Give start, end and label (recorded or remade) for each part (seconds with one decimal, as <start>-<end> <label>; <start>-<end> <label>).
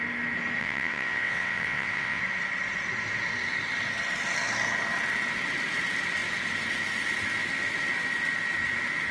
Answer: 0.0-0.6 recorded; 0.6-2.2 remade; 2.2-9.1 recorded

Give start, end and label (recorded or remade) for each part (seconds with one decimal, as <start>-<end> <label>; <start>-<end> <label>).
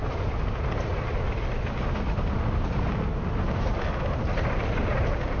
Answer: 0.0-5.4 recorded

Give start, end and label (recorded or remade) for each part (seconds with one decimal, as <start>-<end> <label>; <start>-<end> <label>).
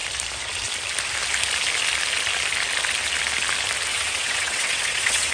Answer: 0.0-3.9 recorded; 3.9-5.3 remade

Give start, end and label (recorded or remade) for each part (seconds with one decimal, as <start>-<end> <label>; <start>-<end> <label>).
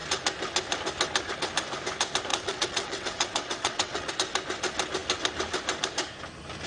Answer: 0.0-2.3 recorded; 2.3-4.1 remade; 4.1-6.7 recorded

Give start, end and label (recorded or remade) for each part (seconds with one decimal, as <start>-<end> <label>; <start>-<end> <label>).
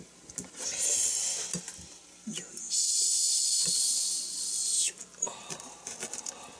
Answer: 0.0-6.6 recorded